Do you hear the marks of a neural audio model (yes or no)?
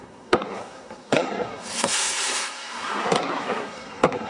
yes